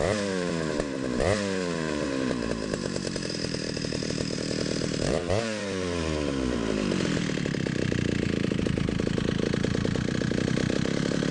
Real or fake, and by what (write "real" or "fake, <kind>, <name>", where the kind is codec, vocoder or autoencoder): fake, vocoder, BigVGAN v2